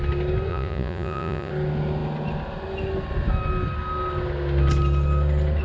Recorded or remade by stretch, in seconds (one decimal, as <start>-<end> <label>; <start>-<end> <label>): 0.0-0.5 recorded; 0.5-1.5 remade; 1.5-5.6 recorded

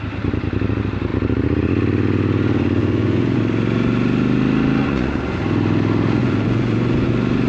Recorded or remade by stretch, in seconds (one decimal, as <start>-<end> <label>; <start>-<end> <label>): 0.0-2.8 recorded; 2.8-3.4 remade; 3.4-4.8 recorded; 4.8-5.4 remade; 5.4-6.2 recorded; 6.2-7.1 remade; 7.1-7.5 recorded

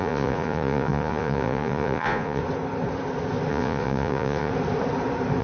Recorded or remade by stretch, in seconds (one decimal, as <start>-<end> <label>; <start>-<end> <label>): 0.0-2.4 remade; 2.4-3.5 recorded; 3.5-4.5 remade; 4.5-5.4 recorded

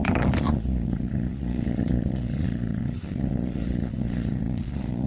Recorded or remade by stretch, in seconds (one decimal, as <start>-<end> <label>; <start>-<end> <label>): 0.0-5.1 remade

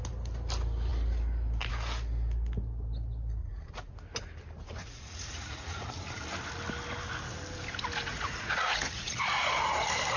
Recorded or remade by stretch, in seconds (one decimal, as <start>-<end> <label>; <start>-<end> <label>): 0.0-3.4 recorded; 3.4-3.9 remade; 3.9-4.8 recorded; 4.8-5.9 remade; 5.9-8.1 recorded; 8.1-9.1 remade; 9.1-10.2 recorded

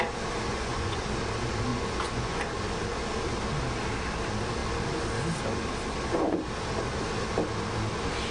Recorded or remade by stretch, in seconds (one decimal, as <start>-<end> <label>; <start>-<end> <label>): 0.0-0.5 recorded; 0.5-1.0 remade; 1.0-1.7 recorded; 1.7-2.4 remade; 2.4-8.3 recorded

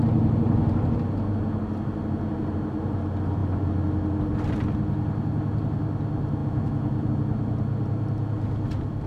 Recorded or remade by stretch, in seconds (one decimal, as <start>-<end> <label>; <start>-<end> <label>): 0.0-6.4 recorded; 6.4-7.1 remade; 7.1-9.1 recorded

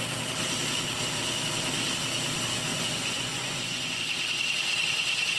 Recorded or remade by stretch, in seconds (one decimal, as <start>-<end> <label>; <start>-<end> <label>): 0.0-2.7 recorded; 2.7-4.0 remade; 4.0-5.4 recorded